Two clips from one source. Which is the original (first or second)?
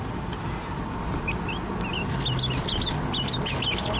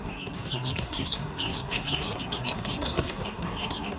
first